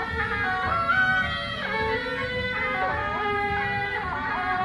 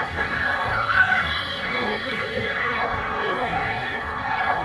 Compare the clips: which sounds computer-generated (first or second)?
second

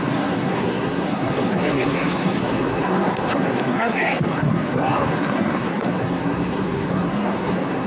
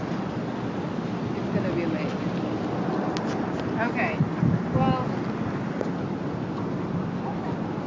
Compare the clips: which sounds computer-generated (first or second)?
first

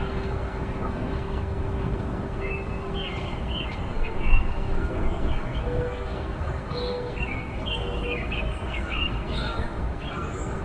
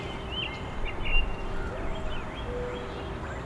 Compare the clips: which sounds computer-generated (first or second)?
first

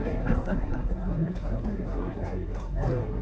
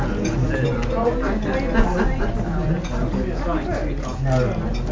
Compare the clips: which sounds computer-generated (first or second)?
first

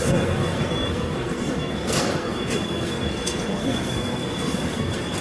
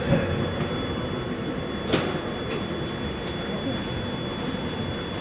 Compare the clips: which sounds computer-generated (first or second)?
first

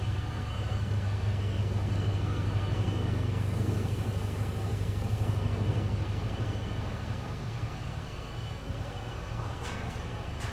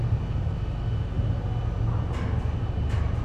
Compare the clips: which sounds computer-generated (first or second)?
first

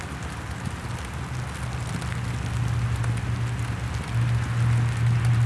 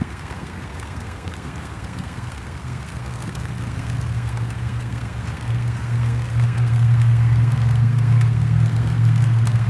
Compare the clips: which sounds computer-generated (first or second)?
second